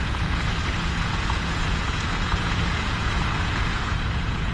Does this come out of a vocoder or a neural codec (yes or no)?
yes